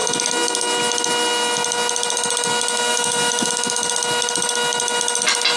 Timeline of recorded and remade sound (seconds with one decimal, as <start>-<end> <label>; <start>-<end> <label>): 0.0-2.9 recorded; 2.9-3.5 remade; 3.5-5.6 recorded